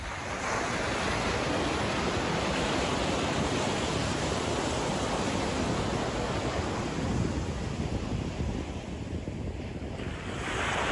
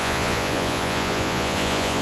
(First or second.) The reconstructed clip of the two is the second